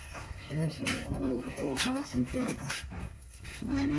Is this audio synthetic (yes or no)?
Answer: yes